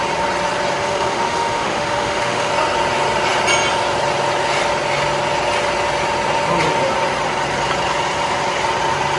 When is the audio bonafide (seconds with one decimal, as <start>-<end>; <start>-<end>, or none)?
0.0-0.8; 2.5-9.2